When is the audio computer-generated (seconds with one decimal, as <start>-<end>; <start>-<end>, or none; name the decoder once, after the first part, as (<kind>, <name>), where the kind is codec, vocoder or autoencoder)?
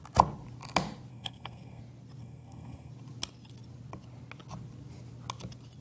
1.1-1.8 (codec, SNAC); 2.2-2.9